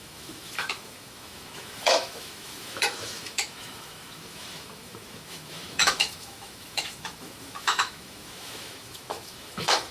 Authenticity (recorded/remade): remade